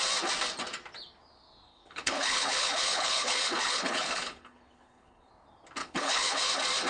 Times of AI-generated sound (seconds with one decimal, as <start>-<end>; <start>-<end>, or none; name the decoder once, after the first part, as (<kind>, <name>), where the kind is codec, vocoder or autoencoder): 1.7-5.3 (codec, HILCodec); 5.8-6.5